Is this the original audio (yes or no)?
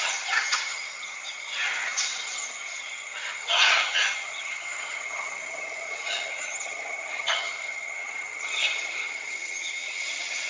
no